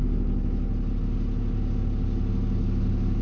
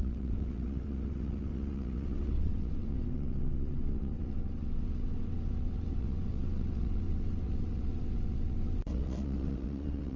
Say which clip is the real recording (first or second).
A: first